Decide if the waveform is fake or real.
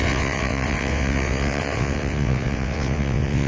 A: fake